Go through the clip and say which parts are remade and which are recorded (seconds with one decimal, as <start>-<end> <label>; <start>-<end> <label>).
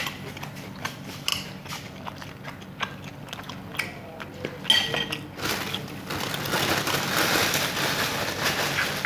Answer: 0.0-9.1 recorded